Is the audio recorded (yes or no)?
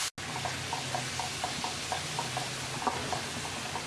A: yes